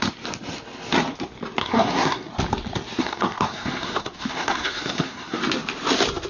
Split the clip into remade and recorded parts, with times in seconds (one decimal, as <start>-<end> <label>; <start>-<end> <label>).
0.0-1.6 recorded; 1.6-2.3 remade; 2.3-3.0 recorded; 3.0-5.4 remade; 5.4-6.3 recorded